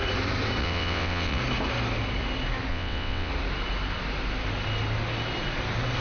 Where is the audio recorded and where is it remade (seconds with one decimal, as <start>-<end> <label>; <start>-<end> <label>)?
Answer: 0.0-0.6 recorded; 0.6-1.4 remade; 1.4-2.7 recorded; 2.7-3.3 remade; 3.3-6.0 recorded